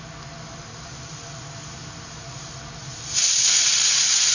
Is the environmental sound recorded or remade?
recorded